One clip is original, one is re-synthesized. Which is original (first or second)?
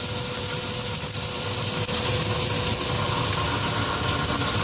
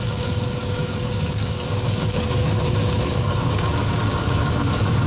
first